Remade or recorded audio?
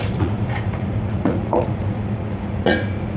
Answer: remade